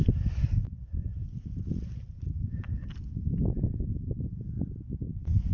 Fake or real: real